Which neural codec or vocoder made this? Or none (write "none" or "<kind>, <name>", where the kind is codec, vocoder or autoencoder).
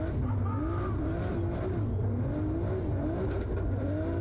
none